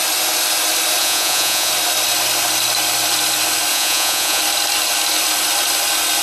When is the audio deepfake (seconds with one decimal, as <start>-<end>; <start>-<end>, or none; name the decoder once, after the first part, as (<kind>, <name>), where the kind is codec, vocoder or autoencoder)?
1.0-1.7 (vocoder, Vocos); 3.7-4.4